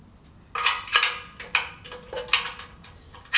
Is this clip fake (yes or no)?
no